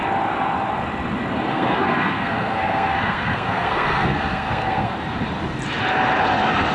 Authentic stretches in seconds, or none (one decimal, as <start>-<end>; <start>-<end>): 0.0-1.5; 4.9-6.7